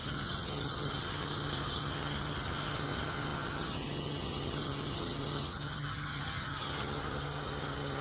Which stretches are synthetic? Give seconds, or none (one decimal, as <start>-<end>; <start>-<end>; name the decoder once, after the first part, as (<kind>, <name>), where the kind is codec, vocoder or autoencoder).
0.0-8.0 (vocoder, HiFi-GAN)